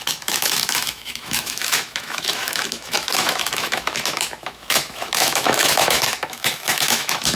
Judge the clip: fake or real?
fake